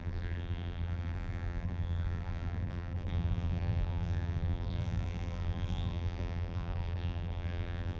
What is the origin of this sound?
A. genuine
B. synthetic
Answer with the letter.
B